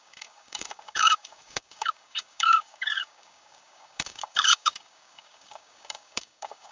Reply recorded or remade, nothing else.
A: remade